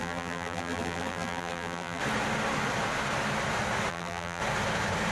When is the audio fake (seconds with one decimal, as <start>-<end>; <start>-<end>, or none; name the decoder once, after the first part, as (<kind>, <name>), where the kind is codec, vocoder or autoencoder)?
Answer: 0.0-2.0 (vocoder, BigVGAN v2); 3.9-4.4